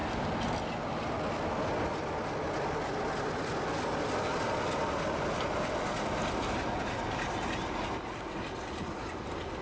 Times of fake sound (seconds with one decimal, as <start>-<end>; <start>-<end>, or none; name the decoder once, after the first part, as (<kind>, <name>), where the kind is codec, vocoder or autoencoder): none